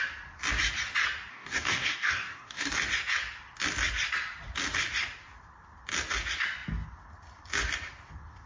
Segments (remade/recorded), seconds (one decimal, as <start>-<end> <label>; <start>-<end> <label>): 0.0-1.3 recorded; 1.3-2.7 remade; 2.7-8.5 recorded